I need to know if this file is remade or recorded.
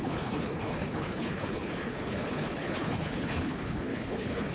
remade